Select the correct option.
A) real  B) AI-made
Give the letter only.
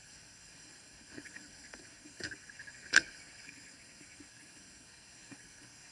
B